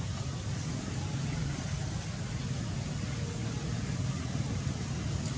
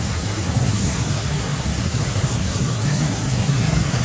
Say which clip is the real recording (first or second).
first